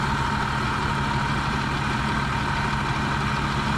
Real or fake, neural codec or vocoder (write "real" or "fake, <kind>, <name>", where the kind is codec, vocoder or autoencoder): real